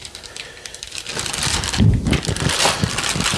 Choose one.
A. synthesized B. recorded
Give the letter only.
A